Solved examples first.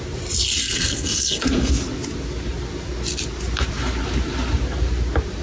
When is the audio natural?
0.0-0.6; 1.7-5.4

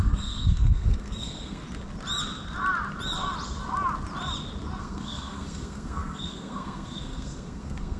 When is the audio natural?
1.6-4.8

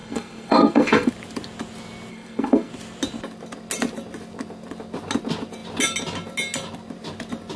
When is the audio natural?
1.1-2.1; 2.7-7.6

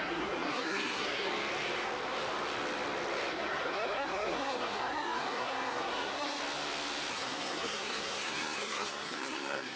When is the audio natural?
1.3-3.3; 6.4-7.1

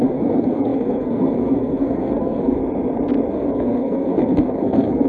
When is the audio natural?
2.6-3.3

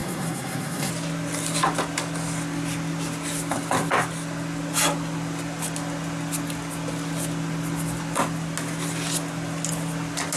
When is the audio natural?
0.9-10.4